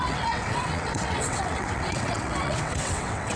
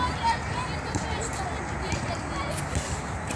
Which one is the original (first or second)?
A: second